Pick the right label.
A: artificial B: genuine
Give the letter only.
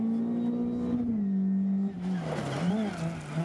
B